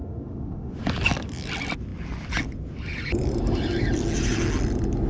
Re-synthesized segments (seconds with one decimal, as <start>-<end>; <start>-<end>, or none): 0.0-0.7